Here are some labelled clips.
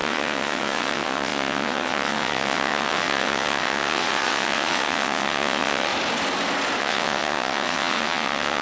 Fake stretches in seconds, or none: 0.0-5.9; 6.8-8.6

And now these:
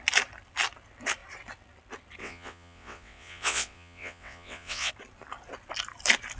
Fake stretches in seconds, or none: 2.2-4.9

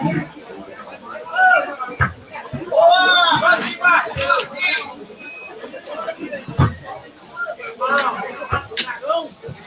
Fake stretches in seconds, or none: none

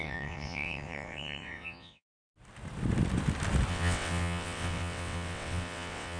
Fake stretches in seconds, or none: 0.0-2.3; 3.7-6.2